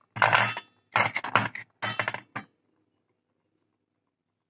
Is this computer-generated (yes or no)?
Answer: no